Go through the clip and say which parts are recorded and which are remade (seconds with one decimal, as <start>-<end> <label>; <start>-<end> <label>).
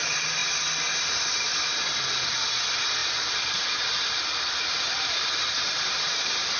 0.0-6.6 recorded